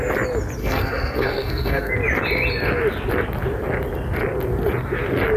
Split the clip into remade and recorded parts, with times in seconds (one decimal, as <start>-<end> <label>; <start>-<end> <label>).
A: 0.0-0.6 recorded; 0.6-1.9 remade; 1.9-5.4 recorded